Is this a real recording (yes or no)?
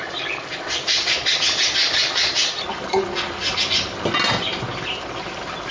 yes